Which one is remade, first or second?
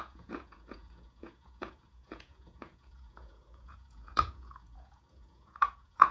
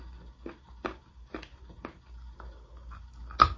first